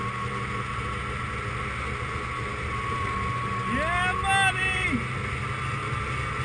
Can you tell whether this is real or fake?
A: real